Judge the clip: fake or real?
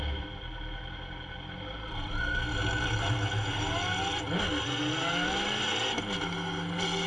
real